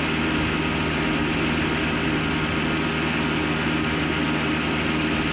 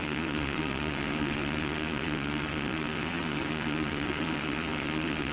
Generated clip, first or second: second